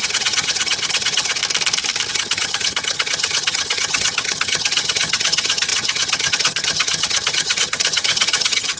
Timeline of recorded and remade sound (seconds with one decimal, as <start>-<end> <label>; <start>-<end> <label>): 0.0-1.4 remade; 1.4-2.1 recorded; 2.1-8.8 remade